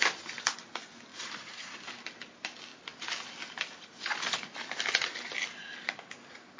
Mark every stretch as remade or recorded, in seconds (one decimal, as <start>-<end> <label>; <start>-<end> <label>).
0.0-1.1 recorded; 1.1-1.8 remade; 1.8-6.6 recorded